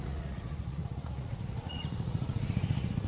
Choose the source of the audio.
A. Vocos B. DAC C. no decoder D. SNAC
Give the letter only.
A